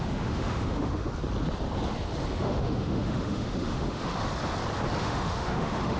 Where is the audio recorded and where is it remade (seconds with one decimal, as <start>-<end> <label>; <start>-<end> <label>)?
0.0-1.1 remade; 1.1-2.3 recorded; 2.3-4.1 remade; 4.1-5.0 recorded; 5.0-6.0 remade